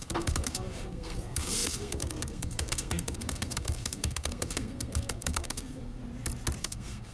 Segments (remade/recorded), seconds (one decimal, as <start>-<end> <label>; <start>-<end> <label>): 0.0-6.0 remade; 6.0-6.6 recorded; 6.6-7.1 remade